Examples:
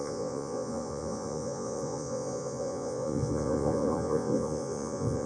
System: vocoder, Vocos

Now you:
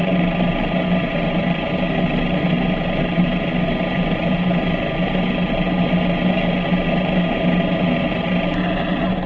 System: none